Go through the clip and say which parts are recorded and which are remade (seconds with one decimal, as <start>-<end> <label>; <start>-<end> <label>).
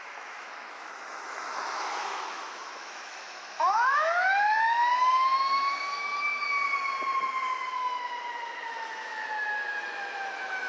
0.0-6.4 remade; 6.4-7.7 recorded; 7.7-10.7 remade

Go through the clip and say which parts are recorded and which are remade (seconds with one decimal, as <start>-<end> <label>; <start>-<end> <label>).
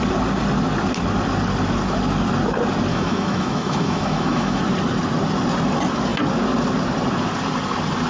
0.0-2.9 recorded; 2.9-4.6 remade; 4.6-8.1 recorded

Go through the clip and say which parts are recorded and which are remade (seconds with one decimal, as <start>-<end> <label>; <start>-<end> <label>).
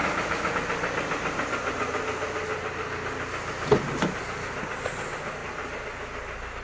0.0-0.5 remade; 0.5-6.6 recorded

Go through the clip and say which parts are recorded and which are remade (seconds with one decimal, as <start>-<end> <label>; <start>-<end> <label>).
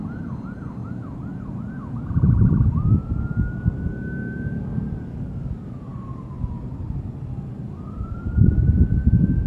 0.0-9.5 recorded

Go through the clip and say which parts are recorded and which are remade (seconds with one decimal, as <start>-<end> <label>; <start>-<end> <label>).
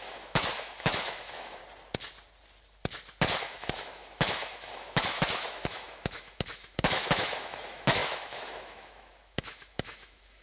0.0-1.6 remade; 1.6-3.4 recorded; 3.4-10.4 remade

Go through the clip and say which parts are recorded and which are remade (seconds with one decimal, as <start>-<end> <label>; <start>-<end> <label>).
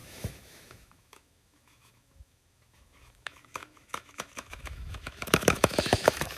0.0-6.4 remade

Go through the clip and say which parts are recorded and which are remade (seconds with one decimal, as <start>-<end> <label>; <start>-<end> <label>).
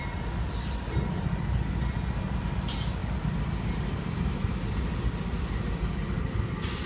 0.0-6.9 recorded